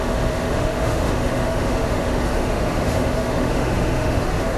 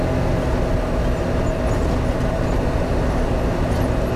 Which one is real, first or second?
second